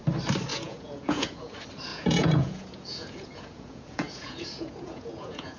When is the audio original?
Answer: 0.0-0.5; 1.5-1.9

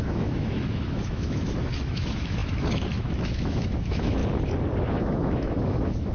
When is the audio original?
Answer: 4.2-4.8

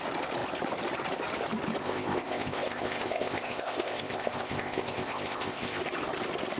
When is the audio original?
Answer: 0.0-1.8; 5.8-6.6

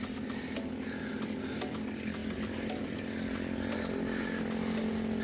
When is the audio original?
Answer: 0.0-5.2

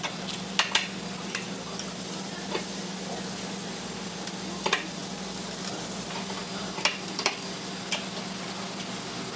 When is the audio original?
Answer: 0.0-9.4

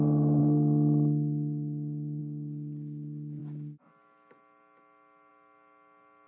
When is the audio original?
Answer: 0.0-6.3

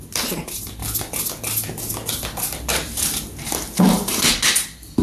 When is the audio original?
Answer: 0.8-3.8; 4.2-5.0

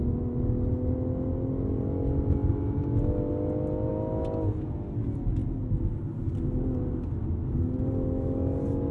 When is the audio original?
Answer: 0.0-8.9